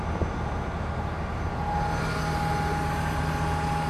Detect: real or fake real